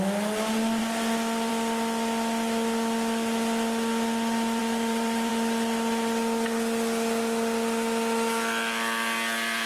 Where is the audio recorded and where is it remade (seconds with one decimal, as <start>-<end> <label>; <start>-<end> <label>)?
0.0-4.6 recorded; 4.6-5.3 remade; 5.3-9.7 recorded